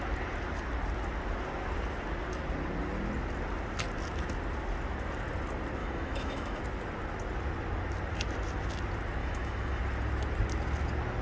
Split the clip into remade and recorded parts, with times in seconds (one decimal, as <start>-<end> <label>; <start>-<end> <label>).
0.0-5.8 recorded; 5.8-6.6 remade; 6.6-9.2 recorded; 9.2-9.8 remade; 9.8-11.2 recorded